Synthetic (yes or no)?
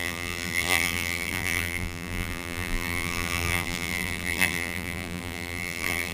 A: yes